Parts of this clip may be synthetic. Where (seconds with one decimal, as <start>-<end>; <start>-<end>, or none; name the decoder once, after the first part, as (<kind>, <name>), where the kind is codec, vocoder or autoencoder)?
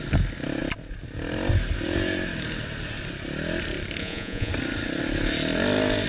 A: 4.0-4.5 (vocoder, Vocos)